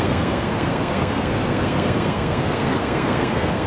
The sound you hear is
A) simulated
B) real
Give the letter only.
A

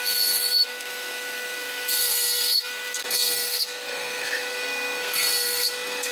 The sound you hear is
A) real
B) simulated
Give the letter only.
B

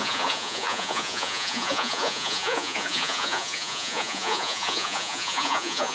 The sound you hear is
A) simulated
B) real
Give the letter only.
A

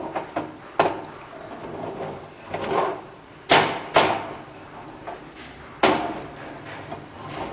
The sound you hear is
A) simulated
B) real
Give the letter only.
A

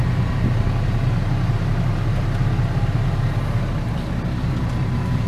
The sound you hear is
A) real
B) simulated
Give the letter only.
A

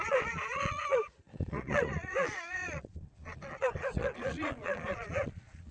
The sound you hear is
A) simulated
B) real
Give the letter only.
A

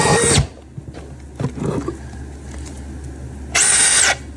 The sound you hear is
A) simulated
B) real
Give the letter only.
B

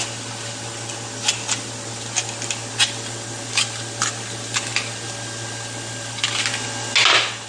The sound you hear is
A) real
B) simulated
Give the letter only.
A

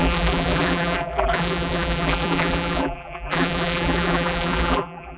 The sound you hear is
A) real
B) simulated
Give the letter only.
B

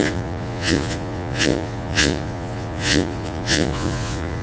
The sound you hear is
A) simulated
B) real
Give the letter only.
A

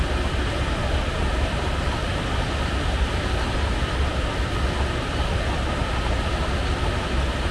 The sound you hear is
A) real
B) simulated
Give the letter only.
A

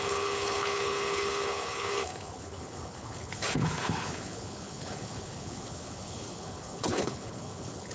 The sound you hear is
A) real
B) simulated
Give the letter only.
B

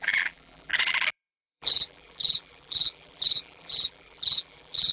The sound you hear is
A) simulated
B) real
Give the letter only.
A